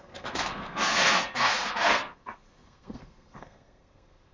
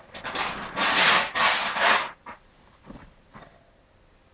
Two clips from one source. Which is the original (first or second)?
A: second